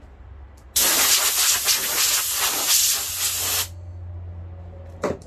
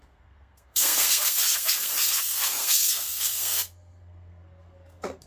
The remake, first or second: second